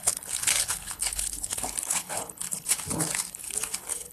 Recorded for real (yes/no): no